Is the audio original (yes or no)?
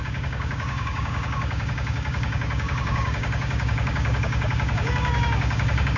no